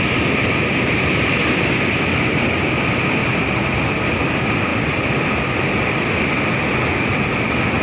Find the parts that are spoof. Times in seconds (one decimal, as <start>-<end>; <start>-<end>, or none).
0.4-1.0; 3.2-3.8